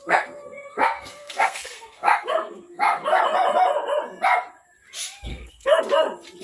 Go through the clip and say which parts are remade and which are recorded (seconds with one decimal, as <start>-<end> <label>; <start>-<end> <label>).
0.0-3.2 remade; 3.2-5.3 recorded; 5.3-5.8 remade; 5.8-6.4 recorded